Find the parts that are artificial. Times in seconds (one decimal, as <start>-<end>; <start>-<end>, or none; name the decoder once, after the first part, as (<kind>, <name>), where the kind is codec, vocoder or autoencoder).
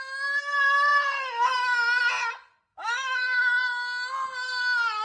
2.7-3.5 (autoencoder, DAC-VAE)